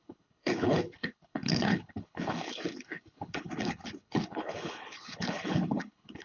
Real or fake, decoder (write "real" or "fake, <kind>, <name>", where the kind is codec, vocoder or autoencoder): fake, codec, HILCodec